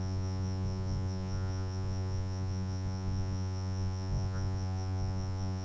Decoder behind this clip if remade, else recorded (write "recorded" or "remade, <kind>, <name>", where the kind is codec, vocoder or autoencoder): remade, vocoder, Vocos